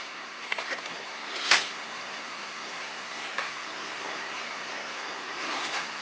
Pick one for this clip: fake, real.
fake